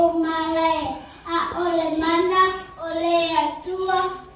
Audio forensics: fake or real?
fake